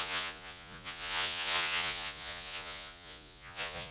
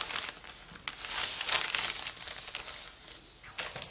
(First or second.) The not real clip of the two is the first